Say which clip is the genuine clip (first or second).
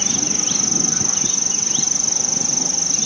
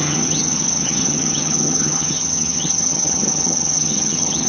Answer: first